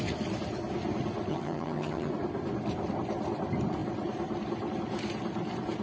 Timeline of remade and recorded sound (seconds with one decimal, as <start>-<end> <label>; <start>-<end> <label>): 0.0-1.3 recorded; 1.3-2.1 remade; 2.1-5.8 recorded